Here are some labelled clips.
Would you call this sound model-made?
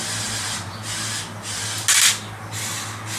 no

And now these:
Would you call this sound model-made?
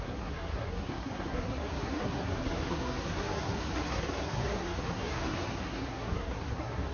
yes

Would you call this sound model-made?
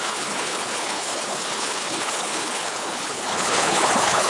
yes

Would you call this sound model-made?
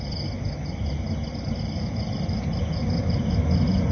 no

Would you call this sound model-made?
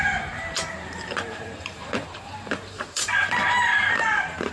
yes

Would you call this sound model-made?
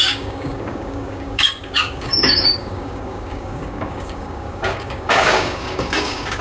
yes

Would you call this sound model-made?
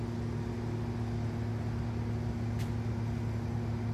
no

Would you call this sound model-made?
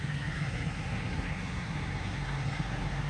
yes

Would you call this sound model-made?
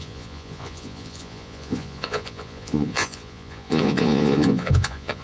yes